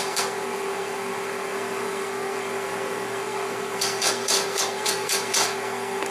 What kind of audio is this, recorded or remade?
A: remade